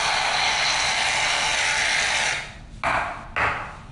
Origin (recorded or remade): recorded